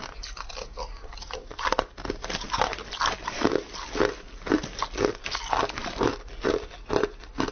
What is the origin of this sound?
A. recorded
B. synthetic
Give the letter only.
A